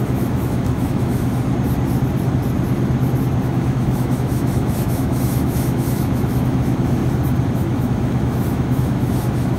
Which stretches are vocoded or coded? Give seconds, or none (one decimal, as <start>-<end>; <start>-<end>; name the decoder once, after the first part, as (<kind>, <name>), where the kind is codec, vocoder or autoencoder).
0.0-1.3 (autoencoder, DAC-VAE); 3.4-7.0; 7.5-9.6